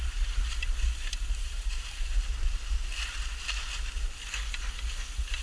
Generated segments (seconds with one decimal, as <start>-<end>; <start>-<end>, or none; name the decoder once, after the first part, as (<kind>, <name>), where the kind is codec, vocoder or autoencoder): 0.0-2.1 (vocoder, BigVGAN v2)